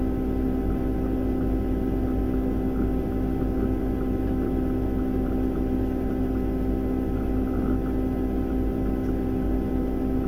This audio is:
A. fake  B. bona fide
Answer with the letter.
B